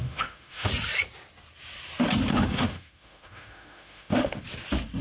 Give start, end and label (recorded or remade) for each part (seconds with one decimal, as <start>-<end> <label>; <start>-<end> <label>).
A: 0.0-0.7 remade; 0.7-2.3 recorded; 2.3-4.4 remade; 4.4-5.0 recorded